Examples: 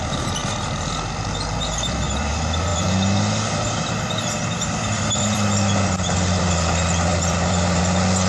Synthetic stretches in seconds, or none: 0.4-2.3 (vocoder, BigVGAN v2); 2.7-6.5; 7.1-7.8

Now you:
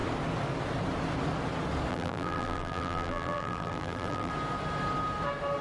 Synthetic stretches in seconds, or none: 1.9-4.3 (vocoder, BigVGAN v2)

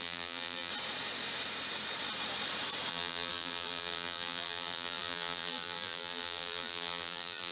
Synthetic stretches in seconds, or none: 0.0-0.7 (vocoder, BigVGAN v2); 2.9-7.5

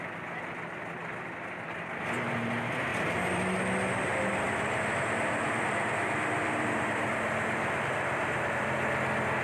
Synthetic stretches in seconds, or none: 2.9-3.6 (vocoder, BigVGAN v2); 4.1-8.6

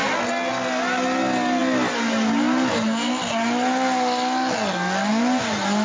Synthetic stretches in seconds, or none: none